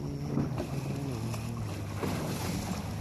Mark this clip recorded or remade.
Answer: recorded